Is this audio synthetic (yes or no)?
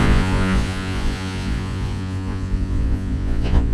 yes